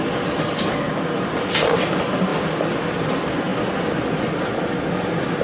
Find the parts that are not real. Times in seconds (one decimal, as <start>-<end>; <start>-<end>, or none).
none